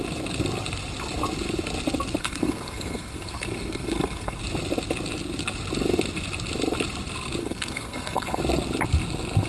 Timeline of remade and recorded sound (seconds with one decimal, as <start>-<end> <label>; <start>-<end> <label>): 0.0-2.2 recorded; 2.2-4.4 remade; 4.4-7.4 recorded; 7.4-8.4 remade; 8.4-9.5 recorded